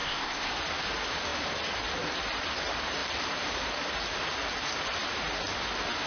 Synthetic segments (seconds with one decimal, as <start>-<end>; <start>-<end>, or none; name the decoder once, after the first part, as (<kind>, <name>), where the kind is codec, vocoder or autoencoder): 0.0-0.5 (codec, ZipCodec)